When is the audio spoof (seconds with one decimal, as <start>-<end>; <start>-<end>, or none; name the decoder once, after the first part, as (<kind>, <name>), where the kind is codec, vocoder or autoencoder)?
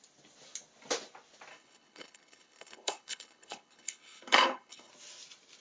1.5-4.9 (codec, HILCodec)